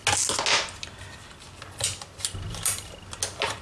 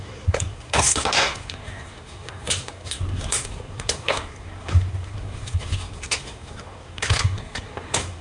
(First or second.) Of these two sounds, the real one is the first